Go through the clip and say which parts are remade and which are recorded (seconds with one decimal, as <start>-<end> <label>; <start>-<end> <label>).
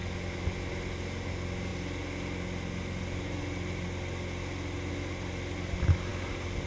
0.0-6.7 recorded